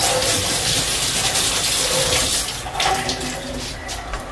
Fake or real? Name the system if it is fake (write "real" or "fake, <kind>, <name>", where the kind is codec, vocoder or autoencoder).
real